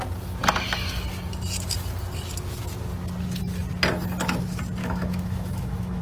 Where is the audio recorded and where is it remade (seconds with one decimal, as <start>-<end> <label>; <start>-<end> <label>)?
0.0-4.8 recorded; 4.8-6.0 remade